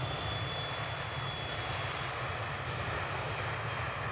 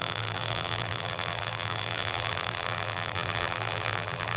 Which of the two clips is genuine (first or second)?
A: first